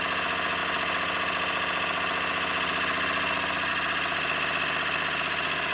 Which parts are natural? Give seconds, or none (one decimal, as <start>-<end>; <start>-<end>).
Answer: 0.0-5.7

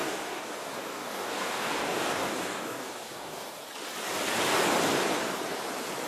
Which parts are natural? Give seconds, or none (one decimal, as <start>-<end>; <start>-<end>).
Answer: 3.6-6.1

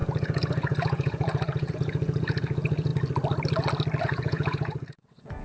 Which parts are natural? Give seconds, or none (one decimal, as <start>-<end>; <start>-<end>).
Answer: 2.9-4.0

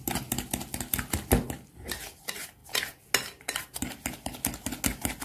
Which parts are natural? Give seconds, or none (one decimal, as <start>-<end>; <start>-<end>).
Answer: 0.0-5.2